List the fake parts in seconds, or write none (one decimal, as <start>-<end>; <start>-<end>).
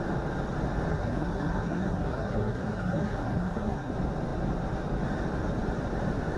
0.9-3.9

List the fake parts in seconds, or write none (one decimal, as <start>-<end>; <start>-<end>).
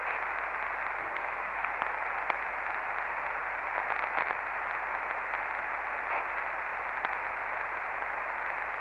1.0-1.7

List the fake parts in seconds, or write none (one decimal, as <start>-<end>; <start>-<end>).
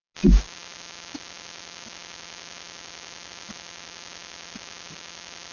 none